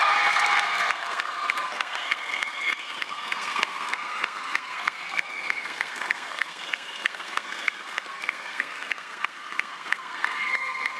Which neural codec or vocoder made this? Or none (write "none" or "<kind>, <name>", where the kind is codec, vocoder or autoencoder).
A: codec, SNAC